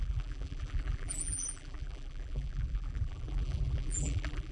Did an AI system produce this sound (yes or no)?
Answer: yes